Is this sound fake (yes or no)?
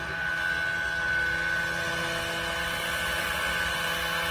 no